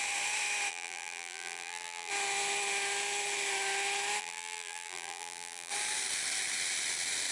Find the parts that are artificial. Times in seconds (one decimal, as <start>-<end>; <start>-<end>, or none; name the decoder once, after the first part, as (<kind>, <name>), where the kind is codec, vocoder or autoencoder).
0.7-2.1 (vocoder, BigVGAN v2); 4.2-5.7